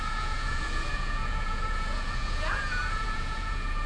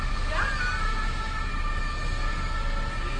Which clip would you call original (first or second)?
second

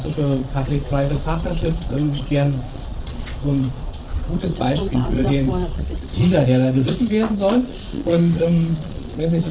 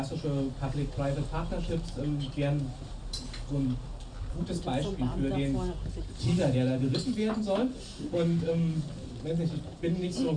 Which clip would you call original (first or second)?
second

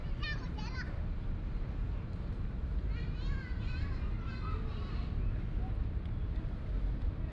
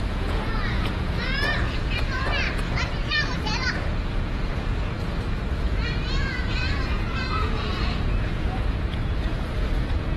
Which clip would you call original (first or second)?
first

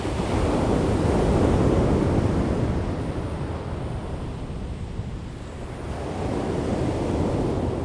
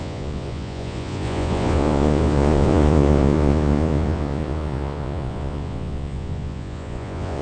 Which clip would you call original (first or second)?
first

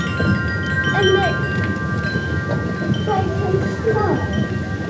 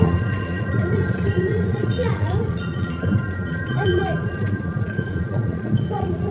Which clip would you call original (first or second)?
first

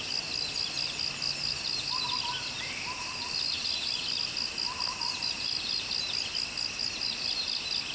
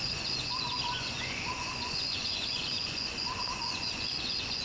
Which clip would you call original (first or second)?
first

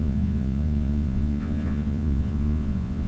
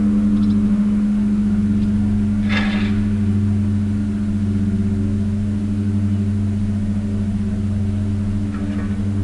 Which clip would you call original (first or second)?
second